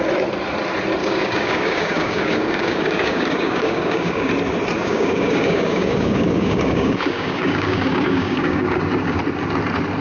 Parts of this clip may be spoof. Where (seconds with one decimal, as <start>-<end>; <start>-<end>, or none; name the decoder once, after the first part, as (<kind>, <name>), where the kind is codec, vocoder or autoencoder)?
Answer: 1.0-4.3 (codec, DAC); 4.8-9.2